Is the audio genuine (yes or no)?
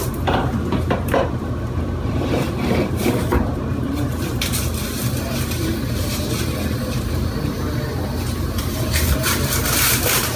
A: no